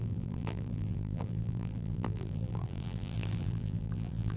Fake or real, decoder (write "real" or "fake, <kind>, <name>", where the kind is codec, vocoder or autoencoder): fake, vocoder, BigVGAN v2